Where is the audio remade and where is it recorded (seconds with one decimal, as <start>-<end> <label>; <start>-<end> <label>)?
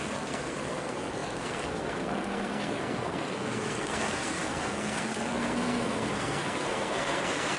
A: 0.0-7.6 remade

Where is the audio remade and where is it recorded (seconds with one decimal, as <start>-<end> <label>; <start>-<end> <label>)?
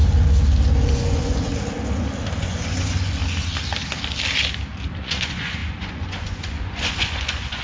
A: 0.0-0.9 recorded; 0.9-1.5 remade; 1.5-2.4 recorded; 2.4-3.2 remade; 3.2-5.0 recorded; 5.0-7.6 remade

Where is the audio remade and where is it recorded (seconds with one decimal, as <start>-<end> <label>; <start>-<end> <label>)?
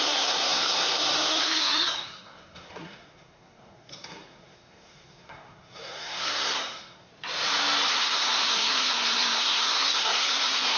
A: 0.0-7.1 remade; 7.1-7.9 recorded; 7.9-10.8 remade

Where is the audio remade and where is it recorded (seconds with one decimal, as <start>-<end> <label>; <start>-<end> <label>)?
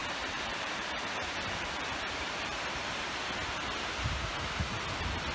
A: 0.0-2.4 remade; 2.4-5.3 recorded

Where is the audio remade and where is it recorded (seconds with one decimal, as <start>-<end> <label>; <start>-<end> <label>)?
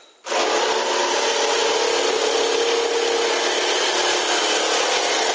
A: 0.0-5.3 recorded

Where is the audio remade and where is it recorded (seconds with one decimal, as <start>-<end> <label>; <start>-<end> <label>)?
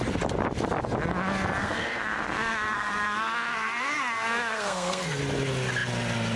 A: 0.0-1.6 recorded; 1.6-5.2 remade; 5.2-6.4 recorded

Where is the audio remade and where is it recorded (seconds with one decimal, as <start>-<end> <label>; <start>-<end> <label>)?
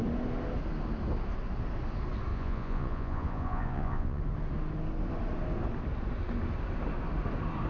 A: 0.0-2.3 recorded; 2.3-4.2 remade; 4.2-7.7 recorded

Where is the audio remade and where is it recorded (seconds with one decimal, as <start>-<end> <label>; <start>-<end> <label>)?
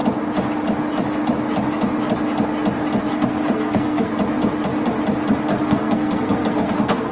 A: 0.0-3.1 recorded; 3.1-4.1 remade; 4.1-5.5 recorded; 5.5-7.1 remade